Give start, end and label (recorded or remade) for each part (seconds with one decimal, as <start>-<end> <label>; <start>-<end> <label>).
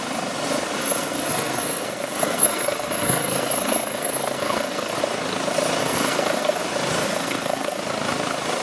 0.0-0.8 recorded; 0.8-5.0 remade; 5.0-5.8 recorded; 5.8-6.6 remade; 6.6-7.0 recorded; 7.0-7.8 remade; 7.8-8.6 recorded